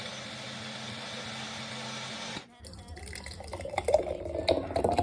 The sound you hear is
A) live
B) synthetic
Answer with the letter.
A